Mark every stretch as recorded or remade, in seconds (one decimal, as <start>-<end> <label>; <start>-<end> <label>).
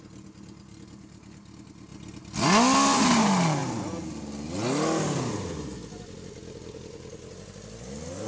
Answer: 0.0-8.3 recorded